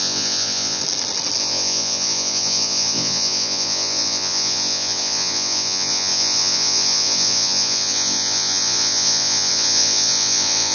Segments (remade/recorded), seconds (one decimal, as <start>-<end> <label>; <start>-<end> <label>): 0.0-0.8 remade; 0.8-1.4 recorded; 1.4-10.7 remade